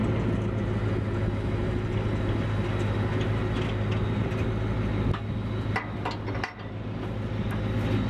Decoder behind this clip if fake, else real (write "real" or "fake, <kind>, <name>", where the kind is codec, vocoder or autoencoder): real